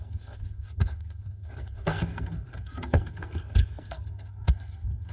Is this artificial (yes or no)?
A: yes